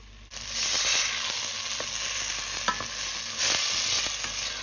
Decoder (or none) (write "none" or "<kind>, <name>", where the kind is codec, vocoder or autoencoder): none